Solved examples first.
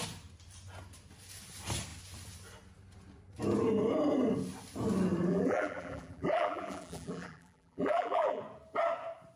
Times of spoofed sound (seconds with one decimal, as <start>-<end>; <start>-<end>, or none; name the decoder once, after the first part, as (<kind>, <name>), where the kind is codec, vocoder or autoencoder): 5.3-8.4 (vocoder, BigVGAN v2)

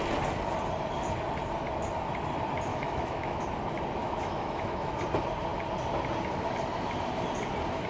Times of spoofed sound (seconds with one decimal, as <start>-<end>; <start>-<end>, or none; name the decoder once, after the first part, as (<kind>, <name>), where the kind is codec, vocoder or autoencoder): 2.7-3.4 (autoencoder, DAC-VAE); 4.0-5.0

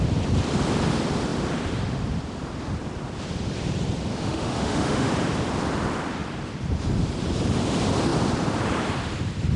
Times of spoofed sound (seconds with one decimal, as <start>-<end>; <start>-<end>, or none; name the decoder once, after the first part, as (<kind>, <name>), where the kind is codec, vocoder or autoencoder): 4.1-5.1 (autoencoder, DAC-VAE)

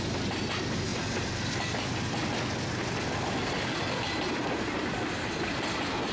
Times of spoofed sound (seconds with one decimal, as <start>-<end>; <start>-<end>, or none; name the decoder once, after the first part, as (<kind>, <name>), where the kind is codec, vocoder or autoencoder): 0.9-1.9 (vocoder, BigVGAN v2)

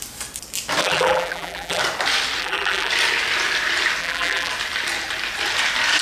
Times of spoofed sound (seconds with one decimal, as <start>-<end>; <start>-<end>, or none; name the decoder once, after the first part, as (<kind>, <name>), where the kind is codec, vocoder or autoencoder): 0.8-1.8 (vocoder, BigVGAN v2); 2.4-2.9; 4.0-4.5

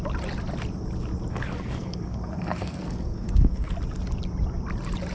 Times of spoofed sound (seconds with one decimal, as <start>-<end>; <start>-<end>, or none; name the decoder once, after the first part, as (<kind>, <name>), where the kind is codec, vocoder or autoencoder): 1.3-3.7 (codec, SNAC)